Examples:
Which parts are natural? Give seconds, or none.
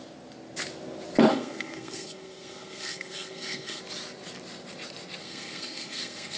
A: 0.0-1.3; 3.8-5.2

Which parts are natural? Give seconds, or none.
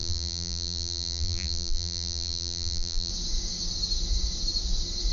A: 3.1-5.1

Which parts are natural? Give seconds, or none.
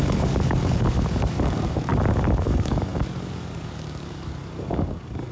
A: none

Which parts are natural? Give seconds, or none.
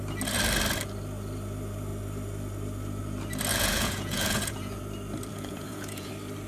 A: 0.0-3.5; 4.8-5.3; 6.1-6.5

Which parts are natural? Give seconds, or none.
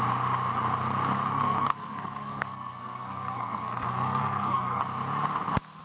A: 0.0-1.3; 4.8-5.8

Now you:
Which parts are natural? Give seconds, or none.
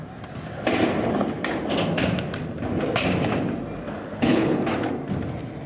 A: 0.0-4.0; 4.6-5.7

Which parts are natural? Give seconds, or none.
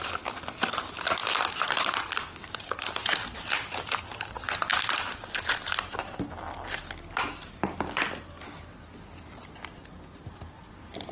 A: 0.0-1.2; 2.8-3.2; 4.0-4.7; 5.5-11.1